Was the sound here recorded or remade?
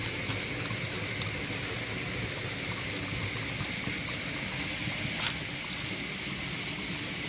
recorded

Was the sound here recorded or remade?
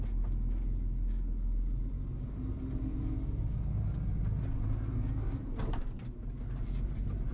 recorded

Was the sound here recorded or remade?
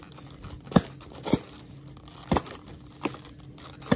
recorded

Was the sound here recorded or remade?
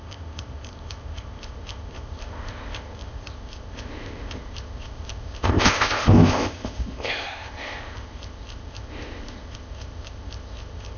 remade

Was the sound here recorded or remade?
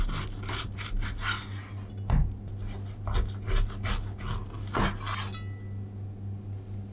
recorded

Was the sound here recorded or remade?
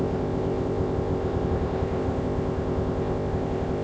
remade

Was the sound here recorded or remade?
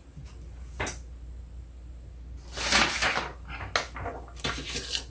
recorded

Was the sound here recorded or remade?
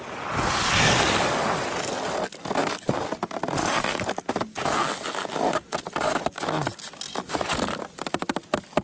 recorded